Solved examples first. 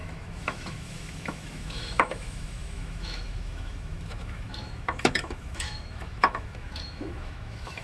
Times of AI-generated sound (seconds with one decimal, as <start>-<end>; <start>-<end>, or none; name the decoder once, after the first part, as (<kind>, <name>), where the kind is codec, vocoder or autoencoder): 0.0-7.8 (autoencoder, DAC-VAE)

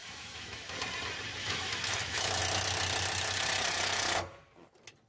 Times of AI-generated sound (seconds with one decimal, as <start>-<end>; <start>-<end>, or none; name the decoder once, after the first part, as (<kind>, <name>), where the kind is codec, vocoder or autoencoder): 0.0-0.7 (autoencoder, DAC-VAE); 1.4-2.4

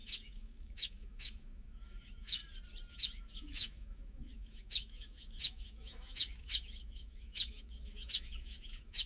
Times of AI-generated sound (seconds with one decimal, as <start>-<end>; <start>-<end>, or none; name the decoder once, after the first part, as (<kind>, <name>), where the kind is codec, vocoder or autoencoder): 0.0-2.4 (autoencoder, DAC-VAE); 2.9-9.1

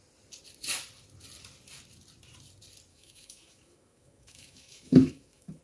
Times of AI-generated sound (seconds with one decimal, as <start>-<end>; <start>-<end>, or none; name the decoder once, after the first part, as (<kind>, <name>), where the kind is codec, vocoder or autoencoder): 2.9-5.6 (autoencoder, DAC-VAE)